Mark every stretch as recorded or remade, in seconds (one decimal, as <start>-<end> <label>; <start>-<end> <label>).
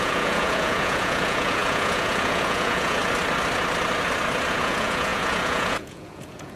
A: 0.0-3.0 remade; 3.0-4.5 recorded; 4.5-6.6 remade